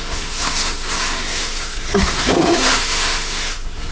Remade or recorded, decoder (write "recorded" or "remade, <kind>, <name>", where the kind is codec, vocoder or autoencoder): remade, codec, SNAC